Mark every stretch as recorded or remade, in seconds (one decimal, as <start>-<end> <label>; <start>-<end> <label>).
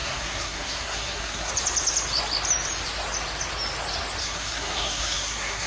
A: 0.0-1.5 remade; 1.5-4.2 recorded; 4.2-5.7 remade